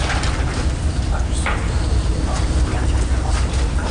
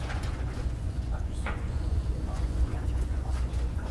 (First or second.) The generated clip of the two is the second